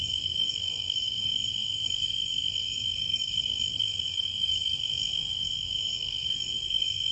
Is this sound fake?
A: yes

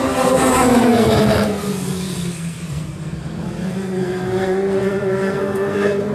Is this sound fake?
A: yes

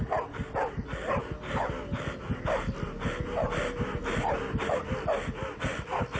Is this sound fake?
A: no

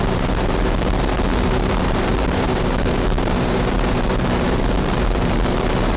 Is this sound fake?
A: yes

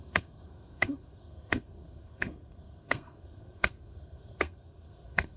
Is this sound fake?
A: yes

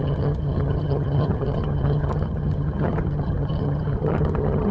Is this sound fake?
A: yes